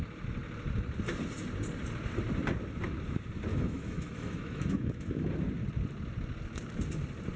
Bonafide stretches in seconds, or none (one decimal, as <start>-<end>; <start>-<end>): 0.0-3.5; 5.3-7.4